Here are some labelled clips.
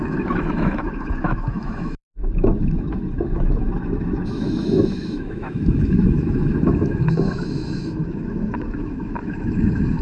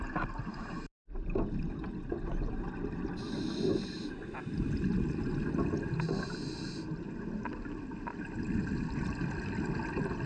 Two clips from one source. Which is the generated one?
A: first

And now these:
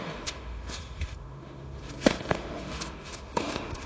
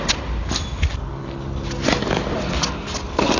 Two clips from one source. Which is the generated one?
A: first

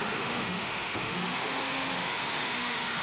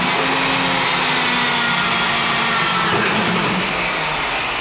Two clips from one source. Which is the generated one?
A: first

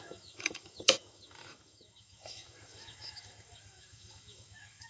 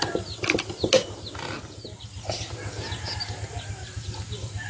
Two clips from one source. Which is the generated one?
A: first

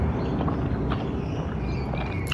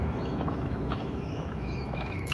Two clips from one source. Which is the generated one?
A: second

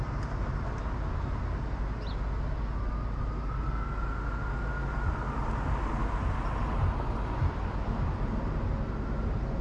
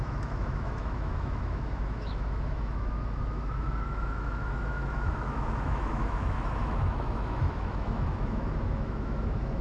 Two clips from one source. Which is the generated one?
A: second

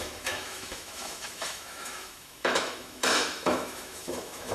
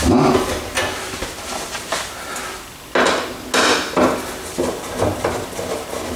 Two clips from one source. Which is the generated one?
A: first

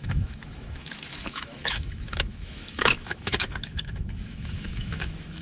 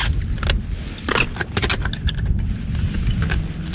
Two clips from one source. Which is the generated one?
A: first